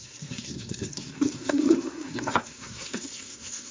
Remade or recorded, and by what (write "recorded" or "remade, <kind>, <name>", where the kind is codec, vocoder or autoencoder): remade, codec, SNAC